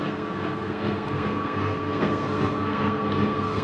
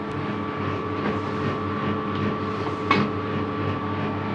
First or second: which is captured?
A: second